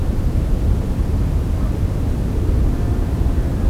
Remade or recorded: recorded